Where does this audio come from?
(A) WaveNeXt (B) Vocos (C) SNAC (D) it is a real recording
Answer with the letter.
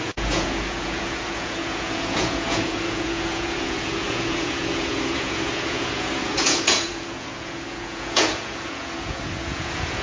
B